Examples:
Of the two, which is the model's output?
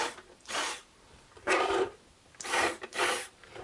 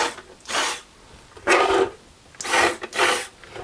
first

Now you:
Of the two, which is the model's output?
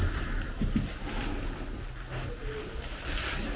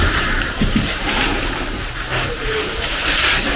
second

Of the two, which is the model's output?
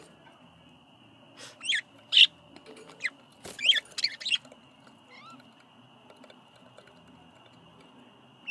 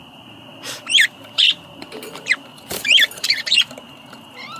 second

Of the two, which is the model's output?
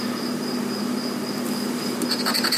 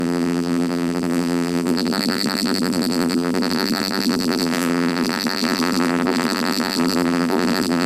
second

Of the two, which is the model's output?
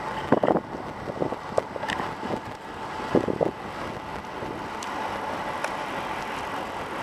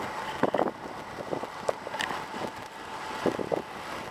second